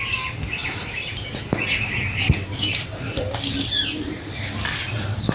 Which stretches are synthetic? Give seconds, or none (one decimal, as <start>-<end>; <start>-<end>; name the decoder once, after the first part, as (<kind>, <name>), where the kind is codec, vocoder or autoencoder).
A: 0.6-1.1 (vocoder, BigVGAN v2); 2.7-3.3